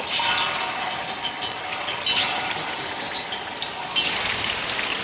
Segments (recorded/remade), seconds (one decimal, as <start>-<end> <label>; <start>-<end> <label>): 0.0-5.0 recorded